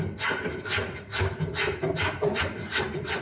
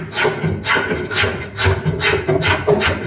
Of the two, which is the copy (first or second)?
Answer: first